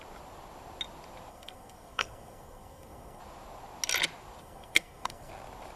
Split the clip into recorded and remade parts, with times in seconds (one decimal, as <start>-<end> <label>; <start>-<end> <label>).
0.0-1.3 recorded; 1.3-3.2 remade; 3.2-4.4 recorded; 4.4-5.3 remade; 5.3-5.8 recorded